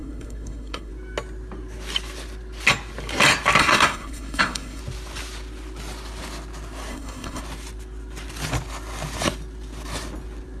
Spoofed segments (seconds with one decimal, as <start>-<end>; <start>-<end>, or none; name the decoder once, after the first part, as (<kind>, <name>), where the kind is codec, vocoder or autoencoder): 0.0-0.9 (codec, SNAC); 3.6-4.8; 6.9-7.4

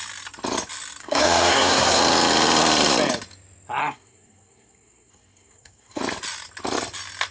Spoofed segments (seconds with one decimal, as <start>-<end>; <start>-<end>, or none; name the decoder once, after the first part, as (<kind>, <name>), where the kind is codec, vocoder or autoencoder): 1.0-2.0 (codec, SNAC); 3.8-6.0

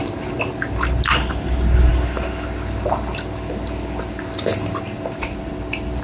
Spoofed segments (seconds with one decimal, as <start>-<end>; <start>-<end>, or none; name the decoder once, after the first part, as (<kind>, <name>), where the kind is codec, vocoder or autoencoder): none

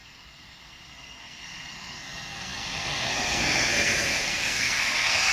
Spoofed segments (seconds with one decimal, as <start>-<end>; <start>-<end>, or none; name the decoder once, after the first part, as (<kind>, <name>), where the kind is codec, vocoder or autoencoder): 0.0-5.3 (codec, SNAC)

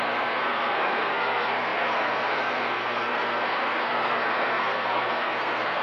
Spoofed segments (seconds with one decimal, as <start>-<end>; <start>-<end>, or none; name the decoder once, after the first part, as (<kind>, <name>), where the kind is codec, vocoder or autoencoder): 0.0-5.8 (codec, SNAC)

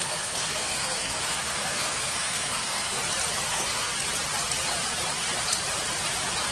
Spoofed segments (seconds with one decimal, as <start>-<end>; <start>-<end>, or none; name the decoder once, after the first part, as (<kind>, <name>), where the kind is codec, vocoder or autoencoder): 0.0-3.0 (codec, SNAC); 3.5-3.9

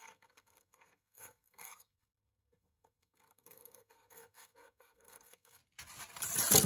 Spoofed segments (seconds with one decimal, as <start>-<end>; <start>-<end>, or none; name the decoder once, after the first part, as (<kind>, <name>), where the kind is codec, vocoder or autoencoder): 0.0-5.6 (codec, SNAC)

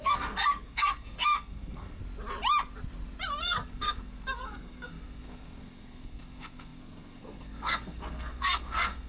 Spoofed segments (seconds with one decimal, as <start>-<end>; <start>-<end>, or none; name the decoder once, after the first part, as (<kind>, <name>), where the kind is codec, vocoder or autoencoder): 0.0-2.0 (codec, SNAC); 3.4-9.1